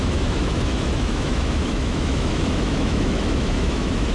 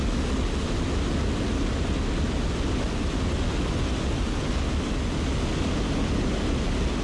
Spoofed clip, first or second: first